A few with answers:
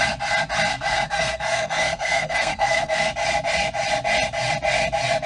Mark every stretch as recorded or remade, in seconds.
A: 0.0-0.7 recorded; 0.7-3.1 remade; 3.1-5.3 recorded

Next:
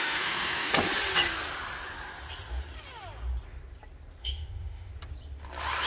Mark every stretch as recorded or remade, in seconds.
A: 0.0-0.7 remade; 0.7-4.2 recorded; 4.2-4.9 remade; 4.9-5.9 recorded

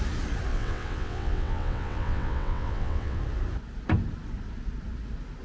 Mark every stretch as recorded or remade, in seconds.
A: 0.0-0.5 recorded; 0.5-3.2 remade; 3.2-5.4 recorded